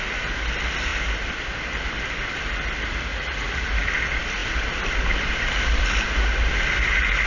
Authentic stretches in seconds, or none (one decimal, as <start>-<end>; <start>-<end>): 0.0-3.1; 3.7-7.3